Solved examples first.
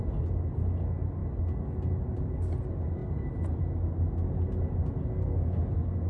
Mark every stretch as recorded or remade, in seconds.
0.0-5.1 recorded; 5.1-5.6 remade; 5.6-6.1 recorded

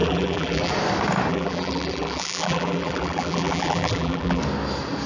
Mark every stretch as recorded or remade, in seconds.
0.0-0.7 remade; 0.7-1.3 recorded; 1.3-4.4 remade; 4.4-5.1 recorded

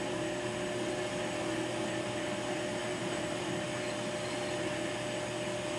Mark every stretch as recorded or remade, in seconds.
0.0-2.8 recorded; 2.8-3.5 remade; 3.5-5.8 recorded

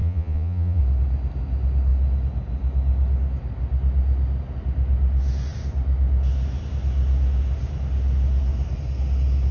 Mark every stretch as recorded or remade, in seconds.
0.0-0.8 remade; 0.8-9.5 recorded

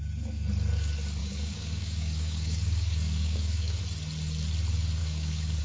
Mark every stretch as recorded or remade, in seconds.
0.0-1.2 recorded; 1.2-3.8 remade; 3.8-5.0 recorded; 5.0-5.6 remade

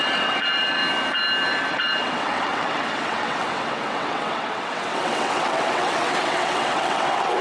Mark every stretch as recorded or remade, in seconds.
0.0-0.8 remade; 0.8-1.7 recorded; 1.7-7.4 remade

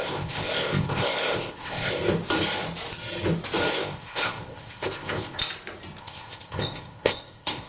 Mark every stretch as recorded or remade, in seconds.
0.0-2.0 remade; 2.0-3.7 recorded; 3.7-5.4 remade; 5.4-6.0 recorded; 6.0-7.7 remade